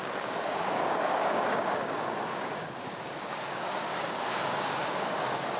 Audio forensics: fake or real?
fake